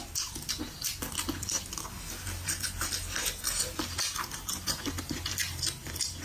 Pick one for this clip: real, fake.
real